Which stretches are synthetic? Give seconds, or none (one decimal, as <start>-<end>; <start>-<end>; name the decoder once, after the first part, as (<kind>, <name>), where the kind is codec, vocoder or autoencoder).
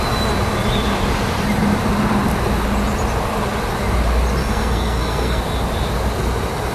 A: 4.4-5.4 (codec, SNAC)